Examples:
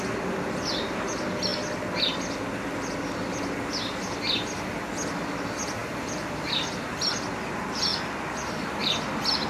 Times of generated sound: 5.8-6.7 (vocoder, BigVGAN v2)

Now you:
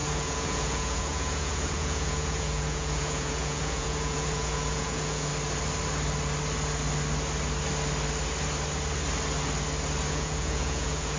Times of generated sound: 0.0-5.3 (vocoder, Vocos); 10.1-11.2

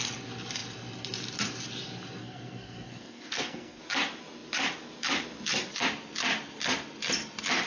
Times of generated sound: 2.2-3.8 (codec, SNAC)

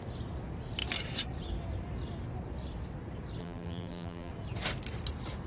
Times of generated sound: 3.4-4.3 (vocoder, BigVGAN v2)

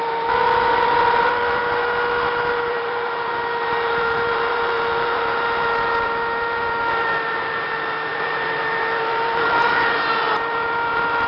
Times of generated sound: 0.0-1.6 (vocoder, BigVGAN v2); 2.7-11.3

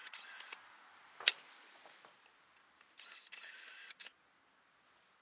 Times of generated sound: none